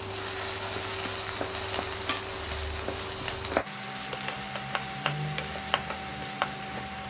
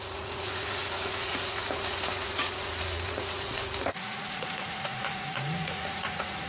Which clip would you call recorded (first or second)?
first